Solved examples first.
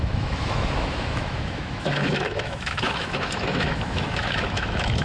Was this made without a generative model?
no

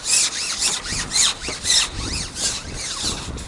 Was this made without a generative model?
yes